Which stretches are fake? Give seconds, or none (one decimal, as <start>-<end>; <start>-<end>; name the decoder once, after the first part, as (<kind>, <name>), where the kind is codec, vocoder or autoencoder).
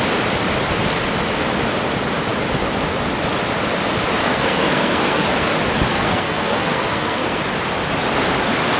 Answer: 4.2-5.5 (codec, SNAC); 5.9-7.4